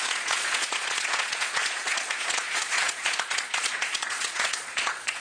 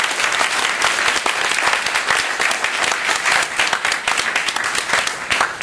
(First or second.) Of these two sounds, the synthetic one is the first